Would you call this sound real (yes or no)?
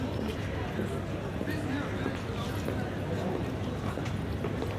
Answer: yes